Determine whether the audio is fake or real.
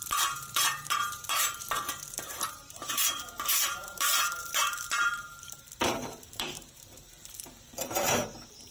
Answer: fake